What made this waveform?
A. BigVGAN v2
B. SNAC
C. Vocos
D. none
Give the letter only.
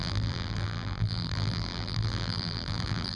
A